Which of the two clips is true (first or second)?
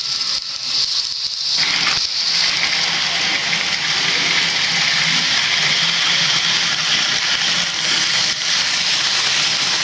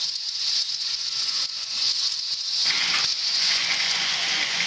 first